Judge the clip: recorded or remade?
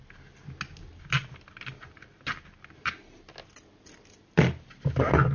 recorded